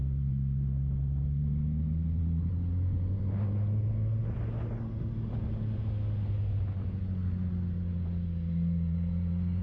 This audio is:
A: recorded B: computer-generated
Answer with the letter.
A